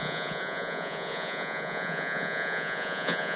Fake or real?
fake